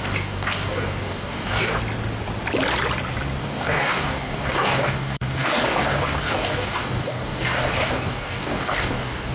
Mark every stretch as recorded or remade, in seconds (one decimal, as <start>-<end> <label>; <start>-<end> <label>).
0.0-1.8 remade; 1.8-3.4 recorded; 3.4-9.3 remade